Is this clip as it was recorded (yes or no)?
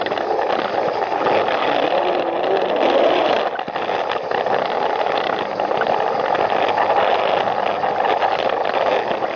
yes